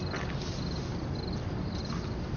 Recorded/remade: recorded